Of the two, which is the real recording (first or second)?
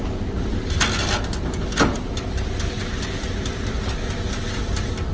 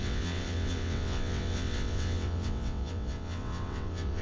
first